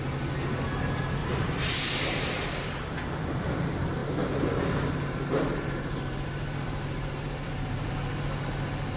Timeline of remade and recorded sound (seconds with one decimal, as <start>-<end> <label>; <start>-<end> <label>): 0.0-1.2 recorded; 1.2-2.9 remade; 2.9-4.0 recorded; 4.0-7.9 remade; 7.9-9.0 recorded